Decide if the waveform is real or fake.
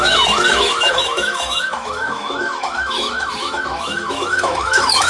fake